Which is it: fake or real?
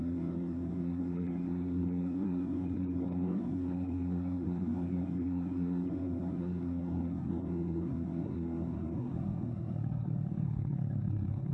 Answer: fake